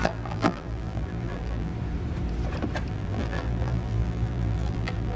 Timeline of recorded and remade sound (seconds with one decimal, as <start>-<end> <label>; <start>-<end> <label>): 0.0-1.7 remade; 1.7-2.9 recorded; 2.9-5.2 remade